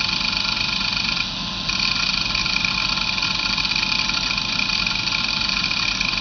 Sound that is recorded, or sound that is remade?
recorded